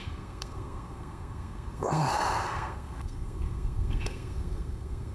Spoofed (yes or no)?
yes